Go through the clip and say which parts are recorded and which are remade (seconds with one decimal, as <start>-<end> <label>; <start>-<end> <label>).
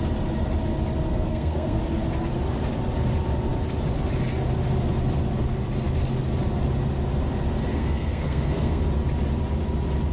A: 0.0-1.1 recorded; 1.1-1.8 remade; 1.8-7.7 recorded; 7.7-8.8 remade; 8.8-10.1 recorded